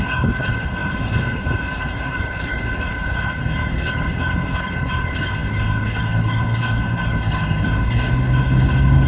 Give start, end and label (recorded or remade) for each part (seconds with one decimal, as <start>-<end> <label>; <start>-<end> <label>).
0.0-9.1 remade